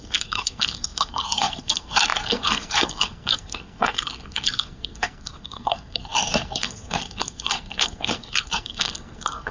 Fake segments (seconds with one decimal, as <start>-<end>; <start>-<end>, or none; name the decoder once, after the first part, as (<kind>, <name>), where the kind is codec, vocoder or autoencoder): 0.0-9.5 (codec, SNAC)